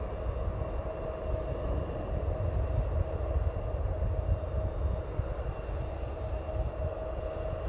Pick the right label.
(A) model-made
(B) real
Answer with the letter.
B